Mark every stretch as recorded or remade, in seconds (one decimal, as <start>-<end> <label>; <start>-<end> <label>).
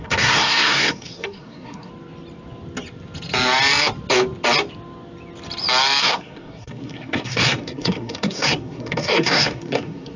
0.0-1.9 remade; 1.9-6.0 recorded; 6.0-10.2 remade